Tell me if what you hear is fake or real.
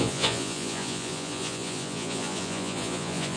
fake